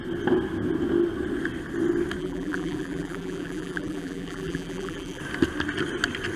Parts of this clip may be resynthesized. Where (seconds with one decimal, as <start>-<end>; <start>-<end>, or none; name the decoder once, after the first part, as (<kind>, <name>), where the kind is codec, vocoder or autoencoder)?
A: 2.2-5.2 (vocoder, BigVGAN v2)